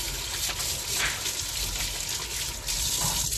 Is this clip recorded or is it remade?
recorded